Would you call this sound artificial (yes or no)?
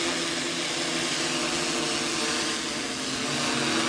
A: no